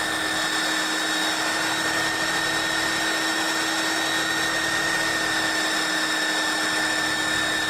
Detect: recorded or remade recorded